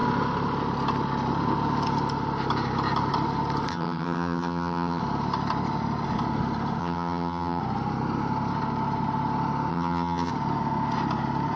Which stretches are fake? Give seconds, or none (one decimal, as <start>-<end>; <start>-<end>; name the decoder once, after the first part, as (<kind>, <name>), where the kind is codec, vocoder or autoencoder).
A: 3.7-5.0 (vocoder, HiFi-GAN); 6.8-7.6; 9.7-10.3